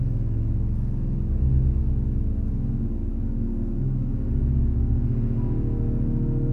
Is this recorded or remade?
recorded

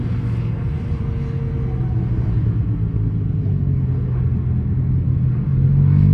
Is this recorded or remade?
recorded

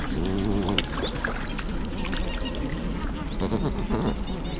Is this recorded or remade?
recorded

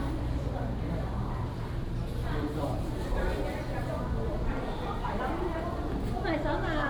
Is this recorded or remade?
remade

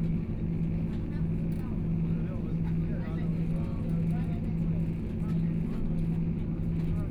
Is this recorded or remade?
recorded